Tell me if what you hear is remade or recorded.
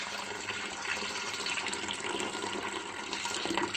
recorded